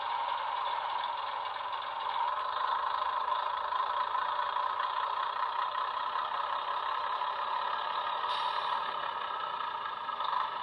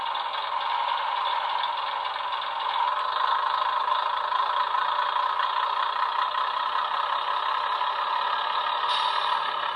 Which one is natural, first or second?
second